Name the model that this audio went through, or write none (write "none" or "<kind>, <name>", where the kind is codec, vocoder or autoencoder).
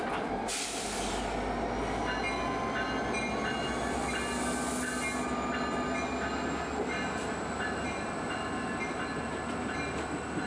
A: none